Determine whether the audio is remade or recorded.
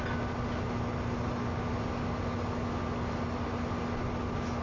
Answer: recorded